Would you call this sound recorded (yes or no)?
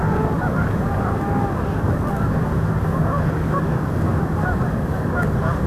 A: no